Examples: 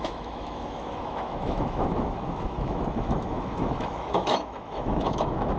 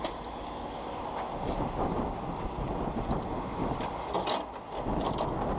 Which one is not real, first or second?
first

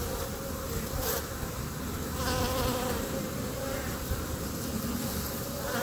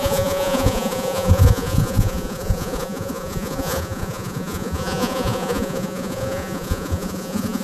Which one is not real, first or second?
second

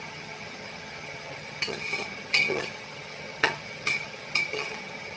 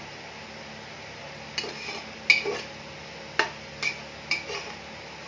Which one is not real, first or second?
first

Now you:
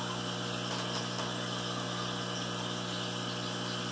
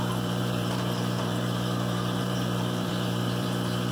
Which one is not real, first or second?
second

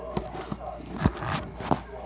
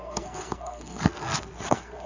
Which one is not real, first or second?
second